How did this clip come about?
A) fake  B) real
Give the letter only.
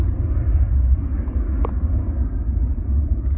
B